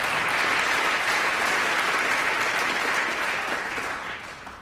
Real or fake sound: real